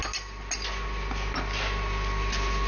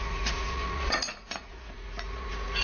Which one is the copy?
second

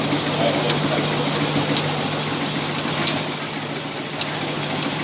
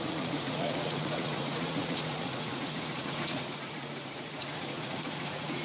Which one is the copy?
second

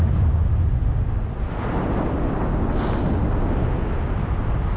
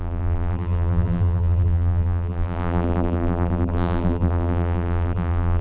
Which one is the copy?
second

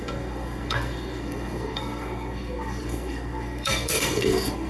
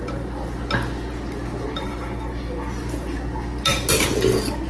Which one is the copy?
first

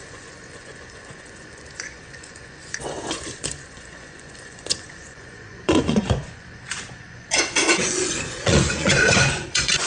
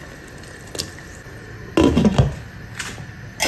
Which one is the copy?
first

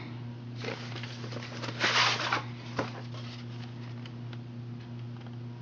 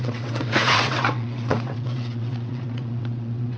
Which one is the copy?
second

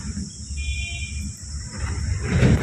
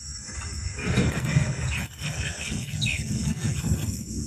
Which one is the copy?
second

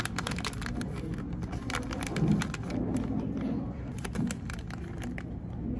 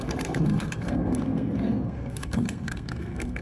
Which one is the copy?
second